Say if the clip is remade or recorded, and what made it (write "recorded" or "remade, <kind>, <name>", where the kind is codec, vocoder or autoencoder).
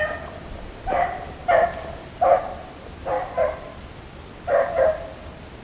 recorded